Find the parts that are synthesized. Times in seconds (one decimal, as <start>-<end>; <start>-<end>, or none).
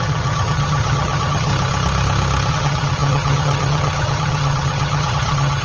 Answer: 0.0-1.5; 2.5-5.6